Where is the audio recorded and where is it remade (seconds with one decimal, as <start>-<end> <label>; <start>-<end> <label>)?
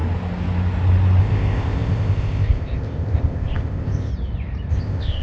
0.0-1.2 recorded; 1.2-4.1 remade; 4.1-4.7 recorded; 4.7-5.2 remade